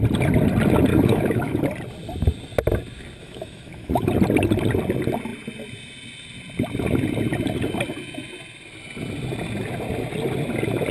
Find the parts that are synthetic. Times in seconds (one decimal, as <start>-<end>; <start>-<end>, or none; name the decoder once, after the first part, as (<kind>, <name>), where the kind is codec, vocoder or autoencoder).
0.9-1.6 (autoencoder, DAC-VAE); 3.2-4.1